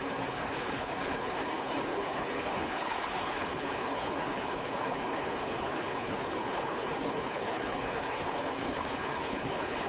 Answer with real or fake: fake